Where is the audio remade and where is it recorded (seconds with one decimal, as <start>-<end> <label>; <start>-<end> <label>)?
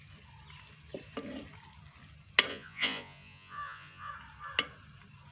0.0-2.5 recorded; 2.5-4.1 remade; 4.1-5.3 recorded